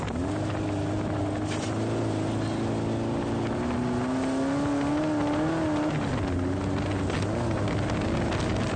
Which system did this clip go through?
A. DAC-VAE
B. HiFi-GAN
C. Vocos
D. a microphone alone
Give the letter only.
D